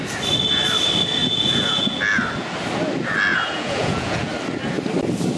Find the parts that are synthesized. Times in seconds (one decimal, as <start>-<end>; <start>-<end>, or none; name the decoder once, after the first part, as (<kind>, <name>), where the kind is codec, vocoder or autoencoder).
1.2-2.0 (vocoder, Vocos); 3.3-4.3